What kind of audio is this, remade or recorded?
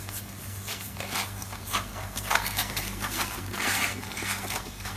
remade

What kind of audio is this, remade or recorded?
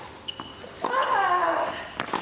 recorded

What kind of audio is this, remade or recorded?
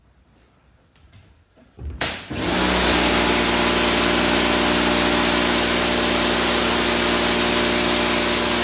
recorded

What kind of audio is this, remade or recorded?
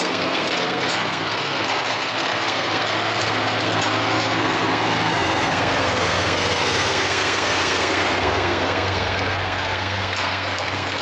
remade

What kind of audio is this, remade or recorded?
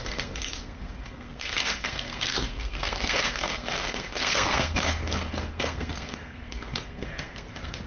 remade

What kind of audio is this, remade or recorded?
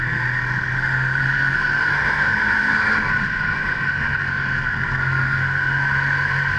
remade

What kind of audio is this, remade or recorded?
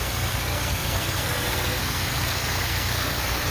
remade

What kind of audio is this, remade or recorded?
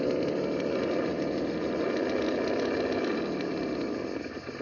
recorded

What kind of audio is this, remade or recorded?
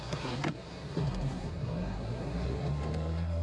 remade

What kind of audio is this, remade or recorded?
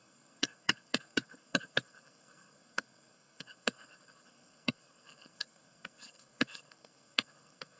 remade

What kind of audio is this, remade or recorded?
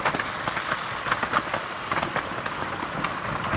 recorded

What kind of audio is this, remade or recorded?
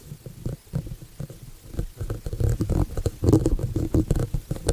recorded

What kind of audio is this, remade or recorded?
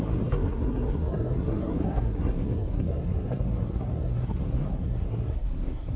remade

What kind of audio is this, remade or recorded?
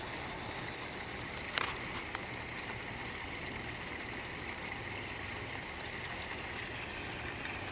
recorded